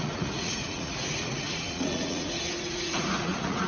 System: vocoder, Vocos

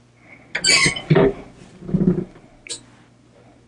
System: none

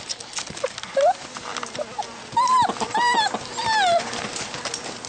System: none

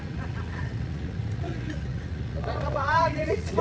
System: vocoder, Vocos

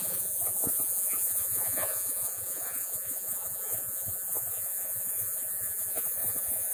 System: vocoder, Vocos